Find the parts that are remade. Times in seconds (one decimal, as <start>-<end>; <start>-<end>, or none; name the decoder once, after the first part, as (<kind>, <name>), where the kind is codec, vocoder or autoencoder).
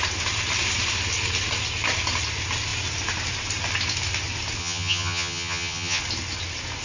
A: 4.6-6.0 (vocoder, HiFi-GAN)